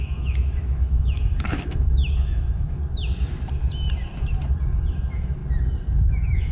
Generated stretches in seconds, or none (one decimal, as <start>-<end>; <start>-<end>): 0.0-2.8; 4.9-5.4; 6.1-6.5